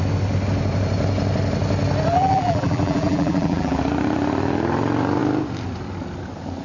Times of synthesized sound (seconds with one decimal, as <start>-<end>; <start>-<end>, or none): 2.1-3.8